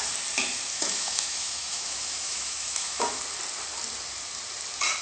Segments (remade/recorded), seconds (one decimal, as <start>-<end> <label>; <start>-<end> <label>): 0.0-0.7 recorded; 0.7-3.2 remade; 3.2-5.0 recorded